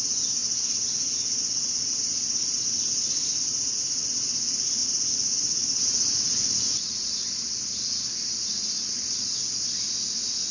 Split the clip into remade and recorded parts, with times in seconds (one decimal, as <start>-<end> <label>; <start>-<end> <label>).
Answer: 0.0-10.5 recorded